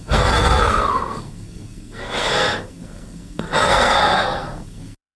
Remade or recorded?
remade